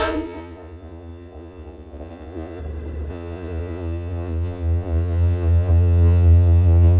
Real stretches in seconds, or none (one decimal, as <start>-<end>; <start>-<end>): 2.6-3.1